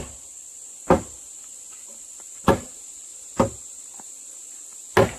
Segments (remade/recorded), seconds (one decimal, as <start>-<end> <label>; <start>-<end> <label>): 0.0-5.2 recorded